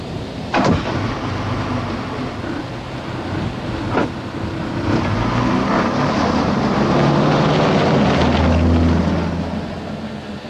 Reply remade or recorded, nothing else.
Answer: recorded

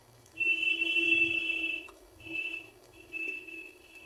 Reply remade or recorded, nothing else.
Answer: remade